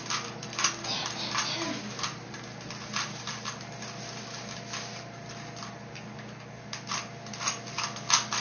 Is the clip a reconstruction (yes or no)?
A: no